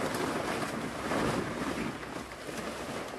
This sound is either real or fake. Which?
real